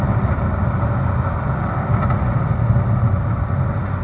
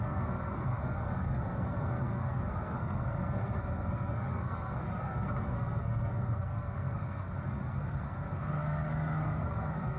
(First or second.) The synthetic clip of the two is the second